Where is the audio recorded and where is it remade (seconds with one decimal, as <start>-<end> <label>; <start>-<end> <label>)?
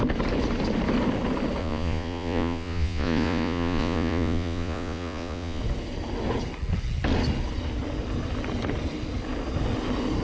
0.0-1.6 recorded; 1.6-5.6 remade; 5.6-10.2 recorded